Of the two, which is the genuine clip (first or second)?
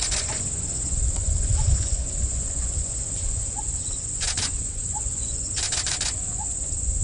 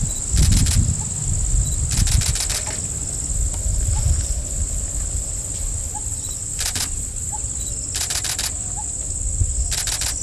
second